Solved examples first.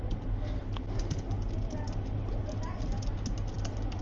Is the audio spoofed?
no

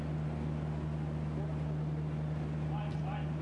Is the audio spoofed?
no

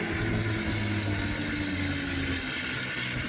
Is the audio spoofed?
no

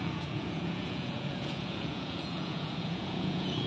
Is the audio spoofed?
yes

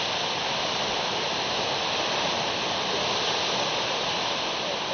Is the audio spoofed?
no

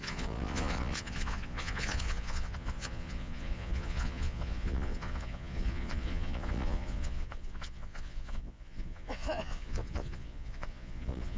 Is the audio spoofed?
yes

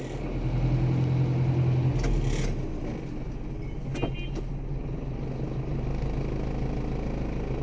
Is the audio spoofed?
no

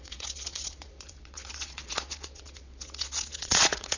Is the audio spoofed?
yes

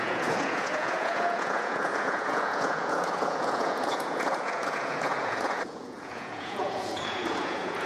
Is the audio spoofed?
yes